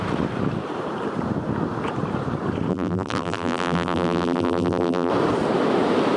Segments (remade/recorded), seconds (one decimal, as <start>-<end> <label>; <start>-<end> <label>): 0.0-2.7 recorded; 2.7-5.1 remade; 5.1-6.2 recorded